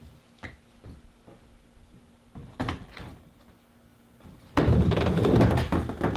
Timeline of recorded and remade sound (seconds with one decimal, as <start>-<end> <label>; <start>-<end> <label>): 0.0-6.2 recorded